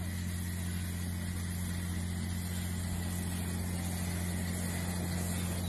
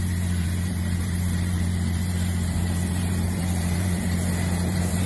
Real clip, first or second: first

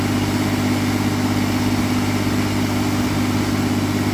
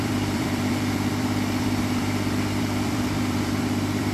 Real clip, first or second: first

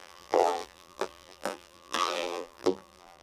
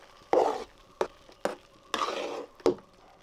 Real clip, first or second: second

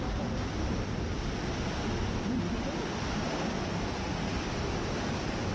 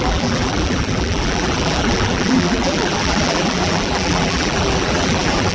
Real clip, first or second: first